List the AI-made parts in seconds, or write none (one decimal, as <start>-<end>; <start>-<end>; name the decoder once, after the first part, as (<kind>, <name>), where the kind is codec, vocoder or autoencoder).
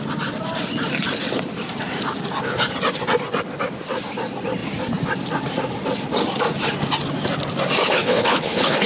7.8-8.9 (codec, HILCodec)